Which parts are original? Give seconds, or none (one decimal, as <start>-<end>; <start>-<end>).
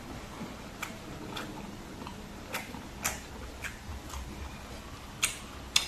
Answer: 0.0-5.9